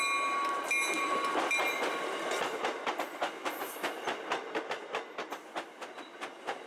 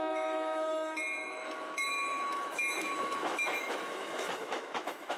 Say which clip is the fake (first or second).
second